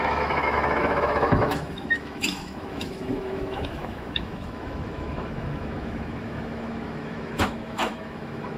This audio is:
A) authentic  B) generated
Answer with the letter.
B